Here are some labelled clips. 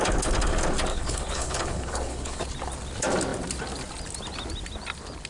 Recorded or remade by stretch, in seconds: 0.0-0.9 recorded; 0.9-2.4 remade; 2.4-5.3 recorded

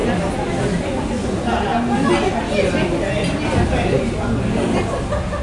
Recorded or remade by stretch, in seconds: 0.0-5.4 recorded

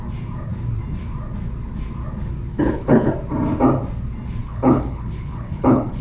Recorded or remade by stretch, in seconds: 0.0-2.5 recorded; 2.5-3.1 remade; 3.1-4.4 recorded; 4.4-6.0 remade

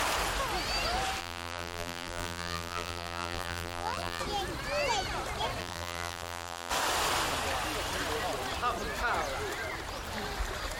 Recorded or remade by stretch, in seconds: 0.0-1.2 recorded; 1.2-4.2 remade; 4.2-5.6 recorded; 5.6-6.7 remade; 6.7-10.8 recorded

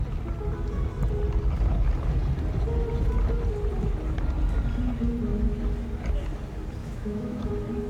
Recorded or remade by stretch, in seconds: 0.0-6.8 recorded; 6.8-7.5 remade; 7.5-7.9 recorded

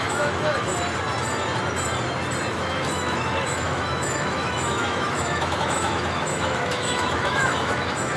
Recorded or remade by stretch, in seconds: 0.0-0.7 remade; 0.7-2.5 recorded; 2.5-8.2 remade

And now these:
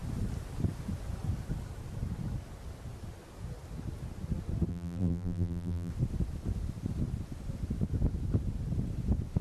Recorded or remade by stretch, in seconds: 0.0-4.7 recorded; 4.7-5.9 remade; 5.9-9.4 recorded